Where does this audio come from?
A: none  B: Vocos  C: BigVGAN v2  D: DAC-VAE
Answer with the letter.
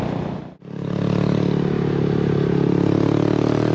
A